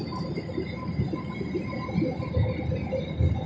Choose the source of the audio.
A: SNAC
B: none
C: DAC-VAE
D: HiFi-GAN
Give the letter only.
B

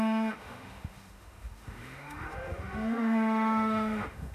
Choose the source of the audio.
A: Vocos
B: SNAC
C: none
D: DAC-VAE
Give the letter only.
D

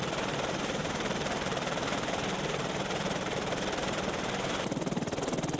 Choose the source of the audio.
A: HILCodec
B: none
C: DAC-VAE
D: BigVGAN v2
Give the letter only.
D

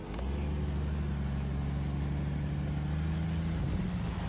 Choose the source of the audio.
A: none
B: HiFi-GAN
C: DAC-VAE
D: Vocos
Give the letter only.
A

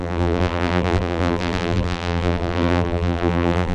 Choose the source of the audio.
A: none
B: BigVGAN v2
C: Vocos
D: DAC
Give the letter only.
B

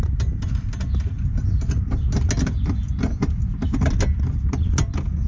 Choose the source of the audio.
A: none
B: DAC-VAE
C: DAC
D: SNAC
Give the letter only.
A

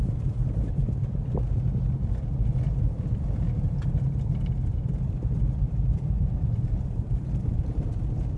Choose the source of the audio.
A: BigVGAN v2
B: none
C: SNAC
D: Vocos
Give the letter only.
A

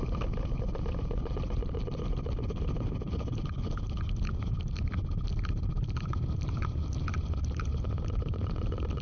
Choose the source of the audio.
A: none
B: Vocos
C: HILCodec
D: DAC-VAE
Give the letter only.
A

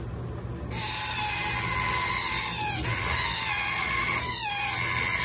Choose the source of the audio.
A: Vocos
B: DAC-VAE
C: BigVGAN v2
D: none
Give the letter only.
D